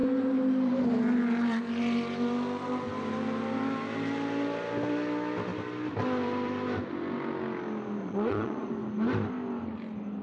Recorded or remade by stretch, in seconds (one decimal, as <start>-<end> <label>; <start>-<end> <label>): 0.0-8.0 recorded; 8.0-8.7 remade; 8.7-10.2 recorded